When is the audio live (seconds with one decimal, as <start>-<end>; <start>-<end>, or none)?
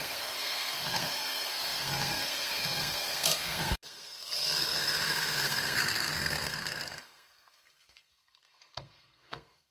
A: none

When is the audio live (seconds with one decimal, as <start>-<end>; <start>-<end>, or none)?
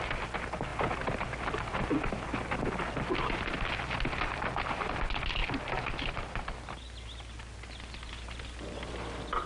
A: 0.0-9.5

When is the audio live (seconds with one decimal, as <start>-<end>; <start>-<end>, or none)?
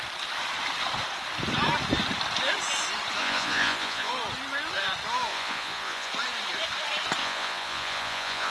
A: 0.0-3.2; 4.1-5.3; 6.1-7.2